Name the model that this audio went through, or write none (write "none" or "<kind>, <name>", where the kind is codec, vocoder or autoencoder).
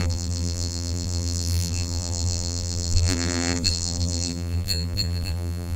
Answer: vocoder, BigVGAN v2